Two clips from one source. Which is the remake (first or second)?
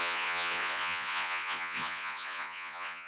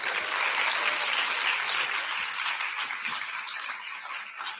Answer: first